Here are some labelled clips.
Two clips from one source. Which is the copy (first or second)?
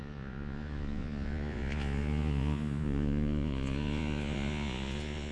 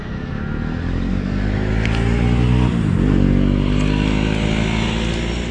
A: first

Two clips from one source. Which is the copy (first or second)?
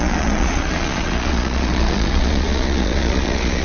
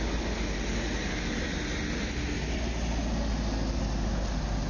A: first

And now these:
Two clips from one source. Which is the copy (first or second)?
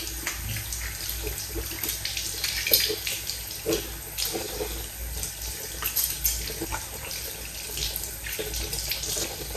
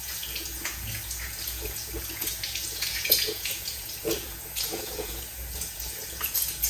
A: second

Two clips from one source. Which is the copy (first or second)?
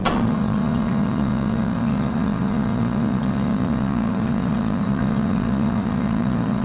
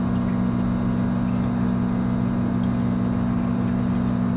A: first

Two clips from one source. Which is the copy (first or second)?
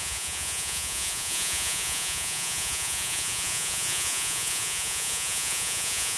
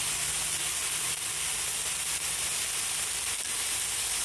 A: first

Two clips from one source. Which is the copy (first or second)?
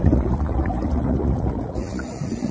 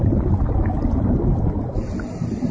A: first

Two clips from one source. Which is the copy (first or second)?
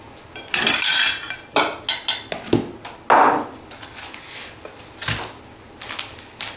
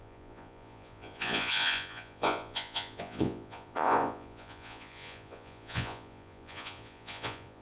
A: second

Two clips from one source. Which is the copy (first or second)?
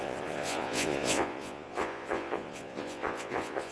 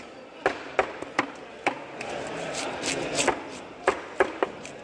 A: first